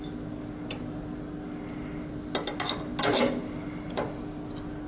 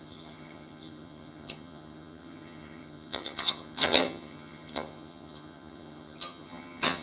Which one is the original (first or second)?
first